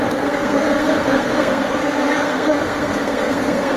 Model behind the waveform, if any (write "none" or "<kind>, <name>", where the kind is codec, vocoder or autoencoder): codec, SNAC